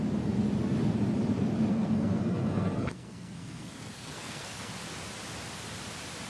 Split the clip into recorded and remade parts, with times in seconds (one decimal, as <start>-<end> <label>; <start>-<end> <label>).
0.0-1.7 recorded; 1.7-4.7 remade; 4.7-6.3 recorded

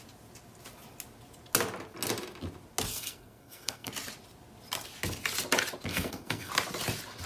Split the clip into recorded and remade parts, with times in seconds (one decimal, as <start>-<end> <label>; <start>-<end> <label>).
0.0-2.9 recorded; 2.9-3.9 remade; 3.9-5.9 recorded; 5.9-6.5 remade; 6.5-7.3 recorded

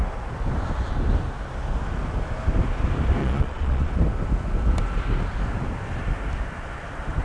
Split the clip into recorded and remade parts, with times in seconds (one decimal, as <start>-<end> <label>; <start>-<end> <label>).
0.0-3.2 recorded; 3.2-3.9 remade; 3.9-7.2 recorded

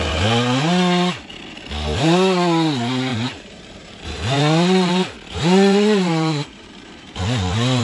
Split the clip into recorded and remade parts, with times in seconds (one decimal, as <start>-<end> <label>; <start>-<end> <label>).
0.0-3.1 recorded; 3.1-7.8 remade

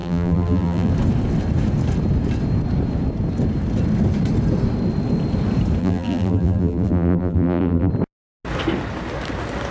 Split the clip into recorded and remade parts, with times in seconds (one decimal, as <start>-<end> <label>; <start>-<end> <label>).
0.0-0.9 remade; 0.9-5.8 recorded; 5.8-7.9 remade; 7.9-9.7 recorded